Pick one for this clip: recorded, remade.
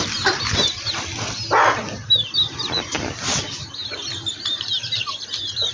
recorded